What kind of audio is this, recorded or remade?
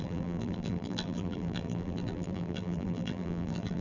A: remade